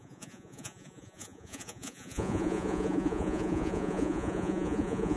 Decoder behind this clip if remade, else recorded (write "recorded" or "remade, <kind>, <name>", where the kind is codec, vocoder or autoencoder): remade, vocoder, Vocos